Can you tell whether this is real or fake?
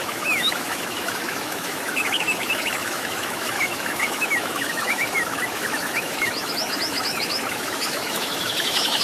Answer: fake